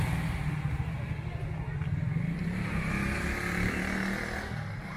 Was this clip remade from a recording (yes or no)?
no